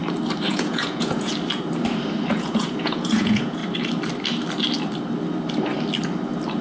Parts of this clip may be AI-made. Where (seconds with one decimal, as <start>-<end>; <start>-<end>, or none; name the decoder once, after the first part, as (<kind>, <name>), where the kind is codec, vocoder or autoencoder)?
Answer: 0.5-1.3 (vocoder, Vocos); 2.3-3.6